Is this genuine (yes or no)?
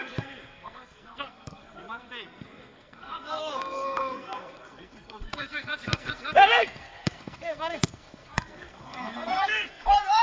no